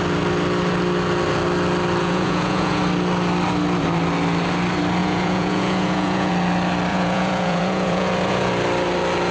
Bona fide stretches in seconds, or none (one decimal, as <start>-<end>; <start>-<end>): 0.0-2.0; 2.8-5.0; 6.3-6.9; 8.5-9.3